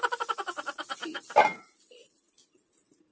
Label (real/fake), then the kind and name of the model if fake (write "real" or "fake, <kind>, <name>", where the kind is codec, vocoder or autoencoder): real